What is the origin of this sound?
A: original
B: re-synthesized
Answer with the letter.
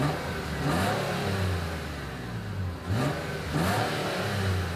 A